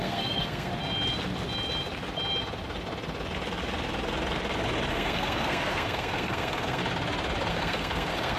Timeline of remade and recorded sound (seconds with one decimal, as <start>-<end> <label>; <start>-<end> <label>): 0.0-0.7 remade; 0.7-4.9 recorded; 4.9-6.8 remade; 6.8-7.5 recorded; 7.5-8.4 remade